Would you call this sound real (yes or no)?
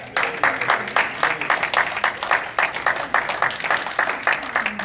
yes